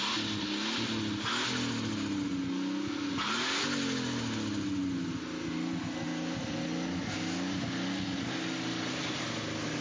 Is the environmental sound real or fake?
real